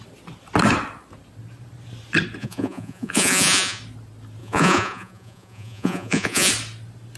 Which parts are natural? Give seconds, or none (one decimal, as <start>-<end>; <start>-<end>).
0.0-2.4; 3.8-4.4; 6.5-7.2